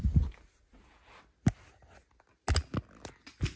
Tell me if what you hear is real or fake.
real